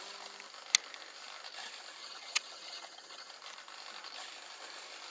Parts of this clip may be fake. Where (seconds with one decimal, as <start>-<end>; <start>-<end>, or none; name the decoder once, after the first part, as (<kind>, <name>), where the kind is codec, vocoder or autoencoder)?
2.0-3.3 (vocoder, HiFi-GAN)